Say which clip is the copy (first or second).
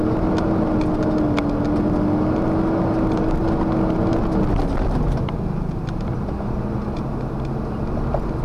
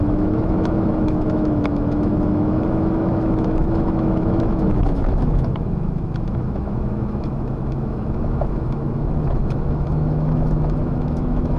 second